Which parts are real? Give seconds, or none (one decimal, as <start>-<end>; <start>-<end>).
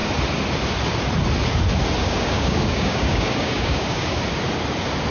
0.0-2.0; 4.2-5.1